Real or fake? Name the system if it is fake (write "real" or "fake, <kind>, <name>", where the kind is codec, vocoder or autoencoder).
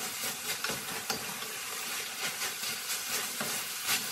real